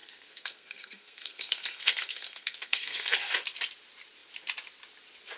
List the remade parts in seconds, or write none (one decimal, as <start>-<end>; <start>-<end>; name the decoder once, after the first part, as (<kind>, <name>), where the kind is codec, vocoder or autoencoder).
0.0-3.2 (codec, SNAC)